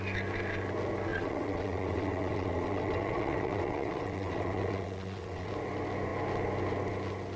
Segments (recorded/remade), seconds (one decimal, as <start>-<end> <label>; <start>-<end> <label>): 0.0-1.1 recorded; 1.1-5.5 remade; 5.5-7.4 recorded